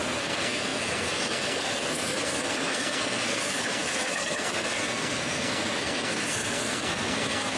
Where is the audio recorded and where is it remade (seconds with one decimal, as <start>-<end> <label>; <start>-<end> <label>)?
0.0-7.6 remade